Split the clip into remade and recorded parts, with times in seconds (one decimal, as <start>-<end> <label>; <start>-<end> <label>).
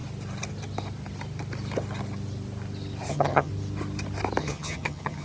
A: 0.0-3.1 recorded; 3.1-3.5 remade; 3.5-4.4 recorded; 4.4-5.2 remade